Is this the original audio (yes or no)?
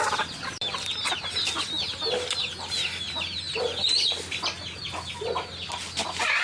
yes